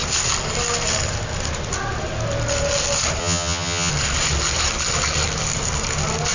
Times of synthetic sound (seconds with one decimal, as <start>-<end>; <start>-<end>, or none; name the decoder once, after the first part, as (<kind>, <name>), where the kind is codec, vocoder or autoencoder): 3.2-3.9 (vocoder, HiFi-GAN)